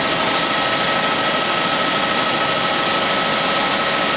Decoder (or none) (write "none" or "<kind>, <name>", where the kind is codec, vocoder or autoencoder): none